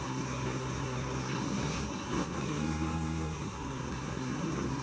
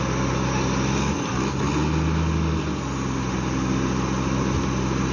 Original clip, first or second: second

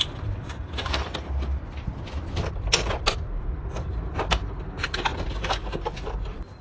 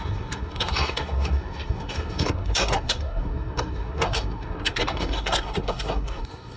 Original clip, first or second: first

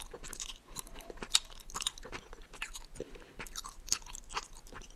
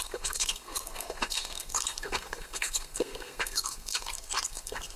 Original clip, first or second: first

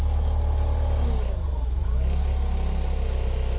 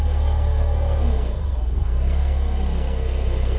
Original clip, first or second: first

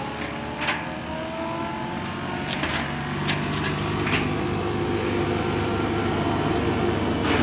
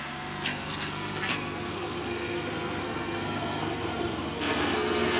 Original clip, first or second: first